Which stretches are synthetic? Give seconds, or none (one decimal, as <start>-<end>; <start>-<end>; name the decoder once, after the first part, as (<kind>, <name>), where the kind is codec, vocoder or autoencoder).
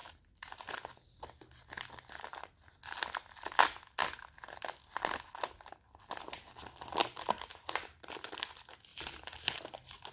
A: 7.0-8.1 (vocoder, BigVGAN v2); 8.9-9.6